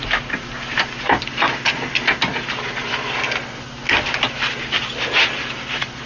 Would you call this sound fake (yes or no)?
no